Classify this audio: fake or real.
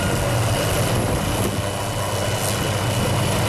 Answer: real